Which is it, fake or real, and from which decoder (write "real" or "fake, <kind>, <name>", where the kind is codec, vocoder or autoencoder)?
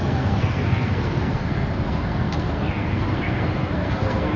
fake, codec, SNAC